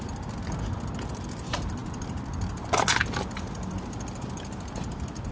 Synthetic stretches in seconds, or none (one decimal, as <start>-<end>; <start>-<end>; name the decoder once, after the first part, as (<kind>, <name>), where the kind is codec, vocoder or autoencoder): none